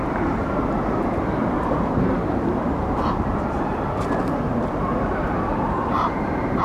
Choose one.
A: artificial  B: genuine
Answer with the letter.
A